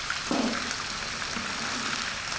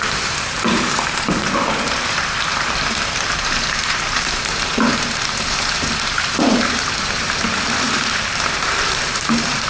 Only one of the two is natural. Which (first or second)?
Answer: first